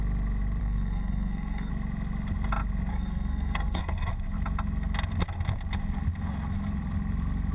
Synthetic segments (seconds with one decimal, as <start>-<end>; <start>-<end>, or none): 0.6-1.7; 2.9-4.1